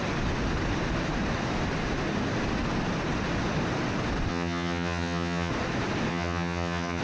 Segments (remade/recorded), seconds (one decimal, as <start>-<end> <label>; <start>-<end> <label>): 0.0-4.3 recorded; 4.3-5.5 remade; 5.5-6.1 recorded; 6.1-7.0 remade